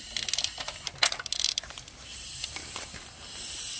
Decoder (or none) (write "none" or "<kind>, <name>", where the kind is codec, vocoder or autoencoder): none